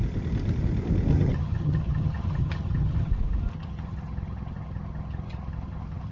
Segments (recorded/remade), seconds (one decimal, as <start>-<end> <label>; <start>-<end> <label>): 0.0-1.1 recorded; 1.1-3.1 remade; 3.1-3.5 recorded; 3.5-6.1 remade